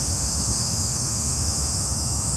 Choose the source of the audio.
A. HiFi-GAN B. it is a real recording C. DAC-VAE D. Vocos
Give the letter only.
C